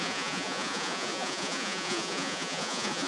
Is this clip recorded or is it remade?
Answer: remade